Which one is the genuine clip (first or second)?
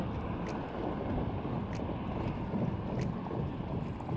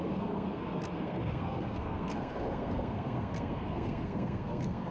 first